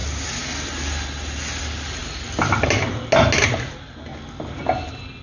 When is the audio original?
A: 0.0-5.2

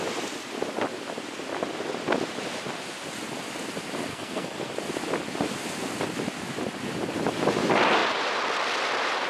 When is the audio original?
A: 0.0-4.1; 4.7-9.3